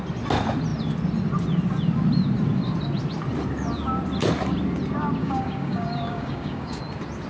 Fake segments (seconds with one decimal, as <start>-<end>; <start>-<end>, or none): 5.2-6.8